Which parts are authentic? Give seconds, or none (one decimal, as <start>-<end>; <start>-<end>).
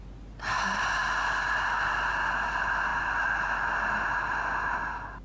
0.0-5.2